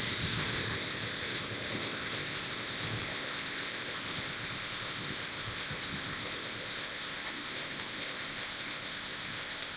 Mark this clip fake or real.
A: fake